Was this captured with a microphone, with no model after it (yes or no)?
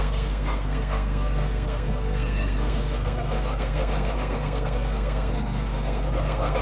no